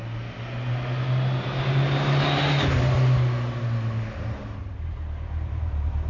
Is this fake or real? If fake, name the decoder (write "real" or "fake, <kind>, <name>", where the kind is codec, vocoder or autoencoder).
real